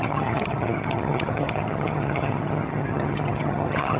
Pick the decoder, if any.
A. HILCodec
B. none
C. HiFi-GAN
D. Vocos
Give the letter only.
C